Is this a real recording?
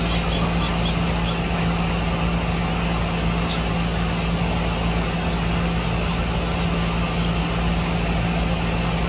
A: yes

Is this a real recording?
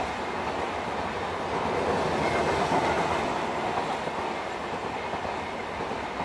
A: yes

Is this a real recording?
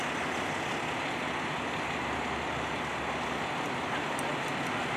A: yes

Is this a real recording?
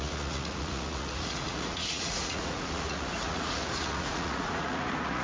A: no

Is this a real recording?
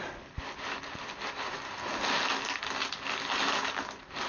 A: yes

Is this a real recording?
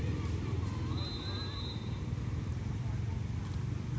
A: yes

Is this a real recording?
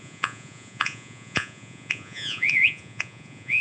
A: no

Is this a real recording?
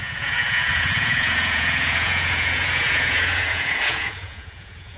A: no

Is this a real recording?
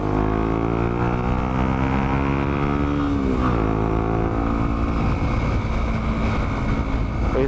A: yes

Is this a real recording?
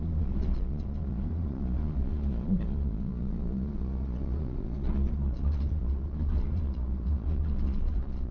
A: no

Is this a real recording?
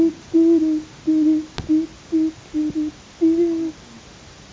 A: yes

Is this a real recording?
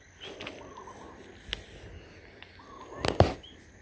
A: yes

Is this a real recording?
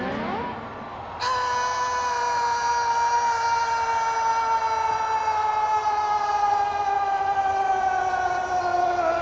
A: yes